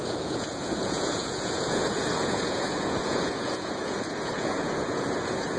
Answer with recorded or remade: remade